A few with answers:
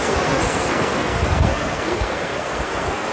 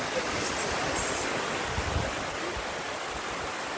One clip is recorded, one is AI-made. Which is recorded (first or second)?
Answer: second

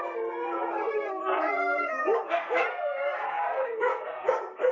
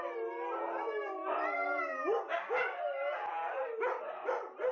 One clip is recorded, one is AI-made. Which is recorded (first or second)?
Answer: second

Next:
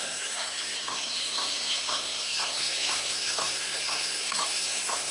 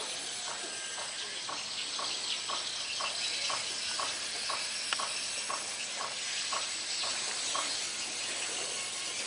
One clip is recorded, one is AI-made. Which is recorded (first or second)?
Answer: second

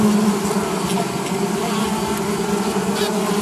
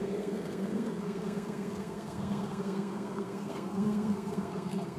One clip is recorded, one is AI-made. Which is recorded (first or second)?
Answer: first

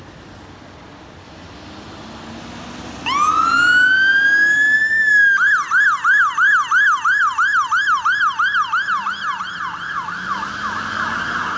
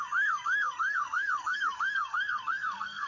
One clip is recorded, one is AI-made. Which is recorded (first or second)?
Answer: first